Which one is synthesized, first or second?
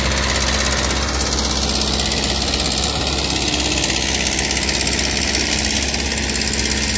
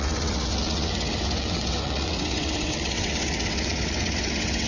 second